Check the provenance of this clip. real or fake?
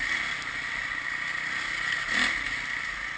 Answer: real